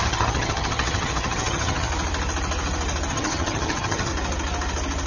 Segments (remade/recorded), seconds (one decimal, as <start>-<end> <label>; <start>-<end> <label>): 0.0-1.9 remade; 1.9-3.1 recorded; 3.1-4.1 remade; 4.1-5.1 recorded